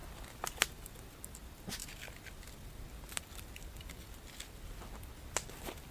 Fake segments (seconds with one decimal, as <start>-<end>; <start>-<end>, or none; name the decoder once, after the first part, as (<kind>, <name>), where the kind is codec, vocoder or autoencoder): none